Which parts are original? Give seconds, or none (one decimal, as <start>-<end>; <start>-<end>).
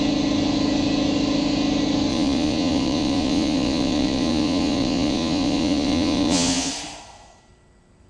0.0-2.1; 6.7-8.1